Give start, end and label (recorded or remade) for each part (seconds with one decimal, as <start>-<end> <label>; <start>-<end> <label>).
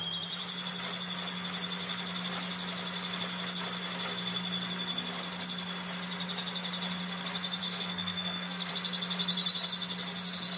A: 0.0-7.6 recorded; 7.6-8.7 remade; 8.7-10.6 recorded